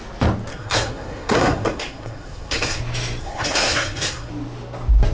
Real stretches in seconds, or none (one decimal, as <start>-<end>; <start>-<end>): 0.0-0.5; 2.8-3.2; 4.3-5.1

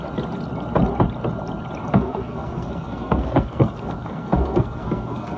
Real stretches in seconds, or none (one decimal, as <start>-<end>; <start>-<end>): 0.0-1.9